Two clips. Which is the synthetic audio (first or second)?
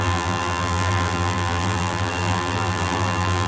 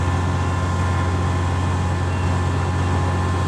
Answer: first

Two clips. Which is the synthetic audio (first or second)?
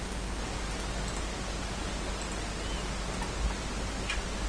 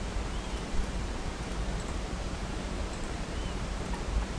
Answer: second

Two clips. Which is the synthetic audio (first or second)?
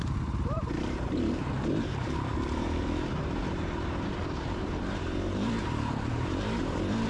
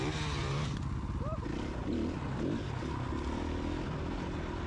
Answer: first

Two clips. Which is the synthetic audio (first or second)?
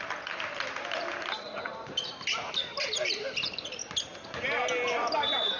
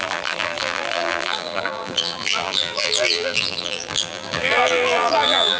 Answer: second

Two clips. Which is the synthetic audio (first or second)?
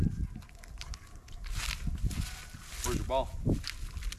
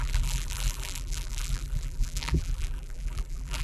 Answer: second